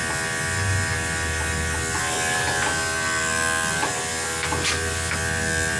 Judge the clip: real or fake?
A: real